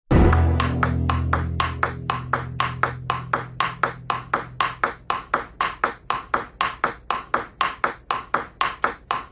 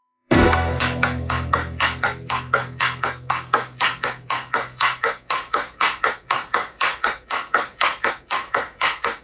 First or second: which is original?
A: first